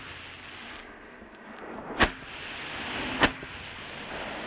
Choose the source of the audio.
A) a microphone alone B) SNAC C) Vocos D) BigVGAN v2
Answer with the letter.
A